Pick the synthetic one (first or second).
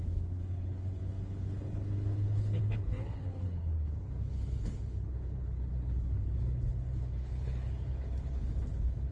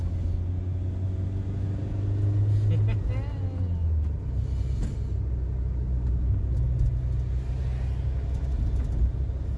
first